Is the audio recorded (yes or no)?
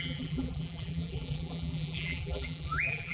no